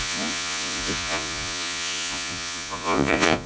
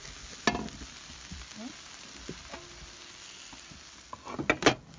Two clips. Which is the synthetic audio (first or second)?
first